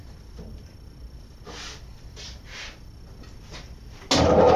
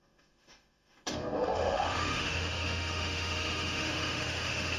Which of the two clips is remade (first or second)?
second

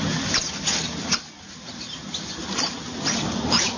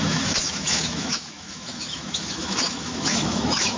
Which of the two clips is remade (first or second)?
second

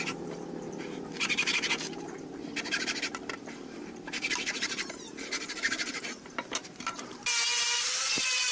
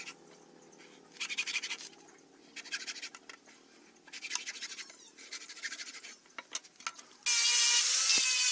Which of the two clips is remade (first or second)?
first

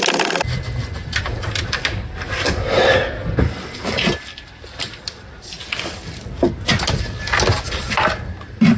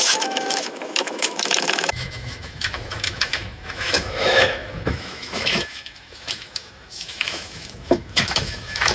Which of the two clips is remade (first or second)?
second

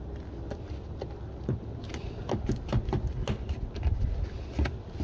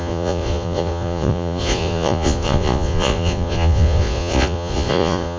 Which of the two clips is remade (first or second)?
second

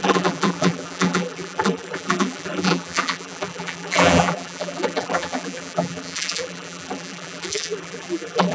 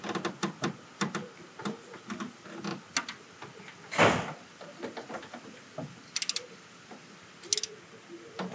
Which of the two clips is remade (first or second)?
first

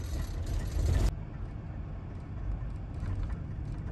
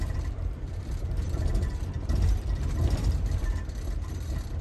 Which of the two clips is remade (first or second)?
second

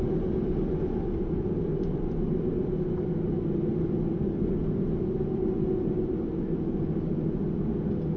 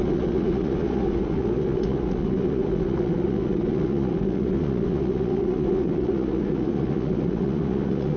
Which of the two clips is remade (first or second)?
second